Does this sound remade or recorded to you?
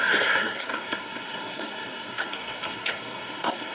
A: remade